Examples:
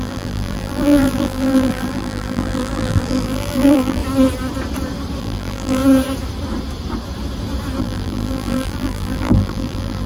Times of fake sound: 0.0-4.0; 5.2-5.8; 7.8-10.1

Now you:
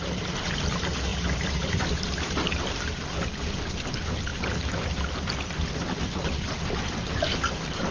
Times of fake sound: 0.0-7.9

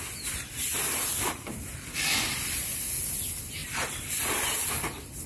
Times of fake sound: none

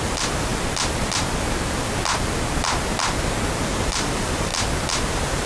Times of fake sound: 0.0-0.5; 3.6-4.5; 5.1-5.5

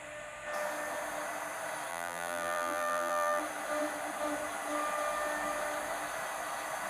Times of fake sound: 1.9-3.4

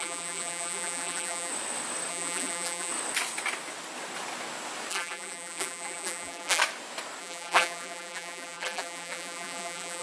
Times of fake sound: 0.0-1.5; 2.1-2.9; 4.9-6.6; 7.2-10.0